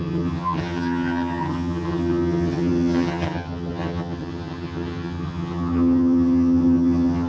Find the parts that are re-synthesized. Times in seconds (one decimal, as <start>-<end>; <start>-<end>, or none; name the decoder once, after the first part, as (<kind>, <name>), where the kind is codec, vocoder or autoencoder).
0.0-7.3 (vocoder, HiFi-GAN)